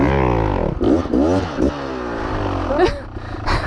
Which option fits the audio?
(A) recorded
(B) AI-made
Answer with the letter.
A